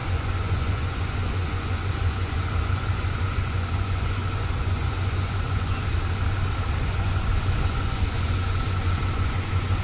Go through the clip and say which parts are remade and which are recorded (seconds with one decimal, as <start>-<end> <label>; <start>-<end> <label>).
0.0-5.9 remade; 5.9-6.8 recorded; 6.8-9.8 remade